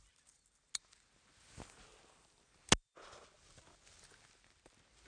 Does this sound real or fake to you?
real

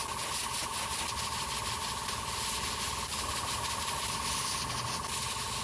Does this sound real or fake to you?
real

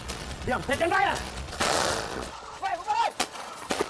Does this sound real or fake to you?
fake